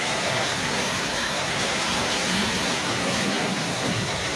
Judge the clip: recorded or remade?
remade